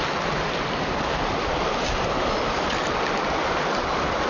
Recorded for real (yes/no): yes